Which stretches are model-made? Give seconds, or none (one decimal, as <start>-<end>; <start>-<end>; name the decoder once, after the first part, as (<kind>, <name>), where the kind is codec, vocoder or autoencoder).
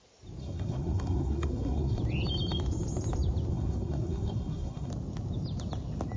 0.4-2.0 (codec, SNAC); 3.5-4.9